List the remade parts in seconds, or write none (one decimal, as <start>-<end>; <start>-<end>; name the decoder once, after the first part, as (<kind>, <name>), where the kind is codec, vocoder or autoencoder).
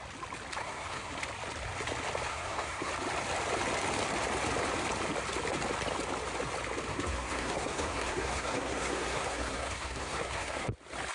0.6-1.1 (codec, SNAC); 2.3-2.9; 6.9-10.7